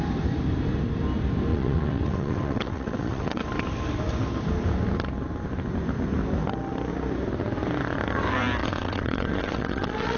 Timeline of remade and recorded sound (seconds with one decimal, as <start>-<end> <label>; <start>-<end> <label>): 0.0-1.5 recorded; 1.5-3.4 remade; 3.4-8.6 recorded; 8.6-10.2 remade